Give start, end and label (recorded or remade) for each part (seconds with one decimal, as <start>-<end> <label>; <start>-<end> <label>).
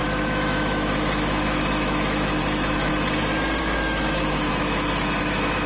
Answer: 0.0-2.9 remade; 2.9-3.6 recorded; 3.6-5.7 remade